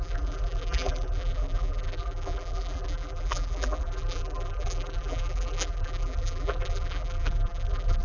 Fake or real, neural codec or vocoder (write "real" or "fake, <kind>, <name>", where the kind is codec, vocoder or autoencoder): fake, vocoder, BigVGAN v2